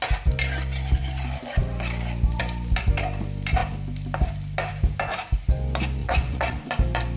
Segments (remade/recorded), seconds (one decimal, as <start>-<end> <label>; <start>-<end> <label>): 0.0-6.0 recorded; 6.0-6.7 remade; 6.7-7.2 recorded

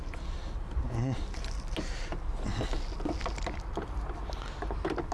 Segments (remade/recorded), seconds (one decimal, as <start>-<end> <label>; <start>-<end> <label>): 0.0-5.1 recorded

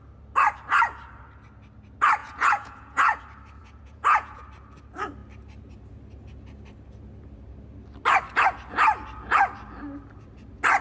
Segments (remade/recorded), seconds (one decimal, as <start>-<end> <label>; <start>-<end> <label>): 0.0-2.2 recorded; 2.2-3.2 remade; 3.2-3.6 recorded; 3.6-4.4 remade; 4.4-10.8 recorded

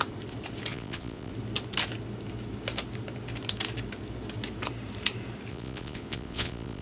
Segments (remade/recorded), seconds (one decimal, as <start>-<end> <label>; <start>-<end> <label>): 0.0-0.7 recorded; 0.7-1.3 remade; 1.3-5.5 recorded; 5.5-6.8 remade

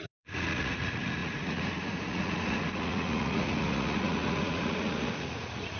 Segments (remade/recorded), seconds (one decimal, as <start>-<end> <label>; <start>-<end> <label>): 0.0-5.8 remade

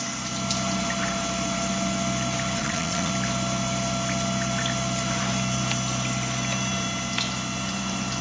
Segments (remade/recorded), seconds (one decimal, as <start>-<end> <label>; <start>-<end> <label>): 0.0-2.6 recorded; 2.6-3.1 remade; 3.1-8.2 recorded

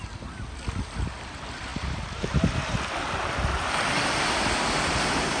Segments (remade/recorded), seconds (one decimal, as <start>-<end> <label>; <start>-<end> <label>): 0.0-5.4 recorded

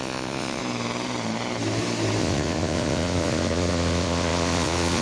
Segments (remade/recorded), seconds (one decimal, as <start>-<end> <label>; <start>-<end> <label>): 0.0-0.6 remade; 0.6-2.2 recorded; 2.2-5.0 remade